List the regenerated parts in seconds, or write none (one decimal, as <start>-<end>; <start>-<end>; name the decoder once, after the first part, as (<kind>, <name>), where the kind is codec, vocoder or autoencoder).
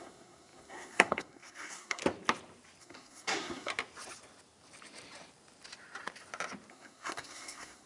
0.0-2.0 (codec, SNAC); 2.8-3.7; 6.7-7.9